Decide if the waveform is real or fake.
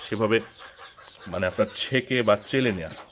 fake